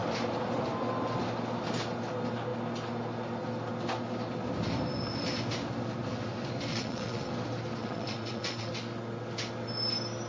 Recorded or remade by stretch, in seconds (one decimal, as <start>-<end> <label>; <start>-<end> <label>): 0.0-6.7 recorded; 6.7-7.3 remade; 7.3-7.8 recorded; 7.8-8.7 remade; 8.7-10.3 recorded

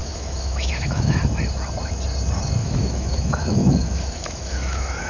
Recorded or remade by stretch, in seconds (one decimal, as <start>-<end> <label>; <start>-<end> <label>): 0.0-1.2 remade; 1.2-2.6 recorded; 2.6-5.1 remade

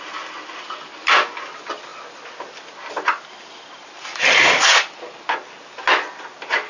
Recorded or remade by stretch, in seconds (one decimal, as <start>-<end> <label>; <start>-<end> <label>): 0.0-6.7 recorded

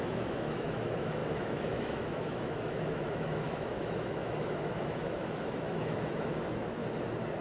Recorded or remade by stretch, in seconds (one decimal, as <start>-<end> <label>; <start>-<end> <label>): 0.0-6.8 remade; 6.8-7.4 recorded

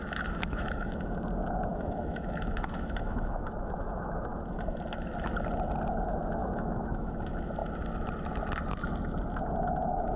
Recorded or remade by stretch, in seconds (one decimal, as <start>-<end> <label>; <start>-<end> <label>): 0.0-1.1 remade; 1.1-1.7 recorded; 1.7-4.6 remade; 4.6-6.4 recorded; 6.4-7.1 remade; 7.1-10.2 recorded